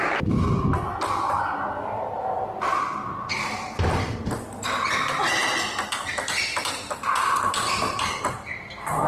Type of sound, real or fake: real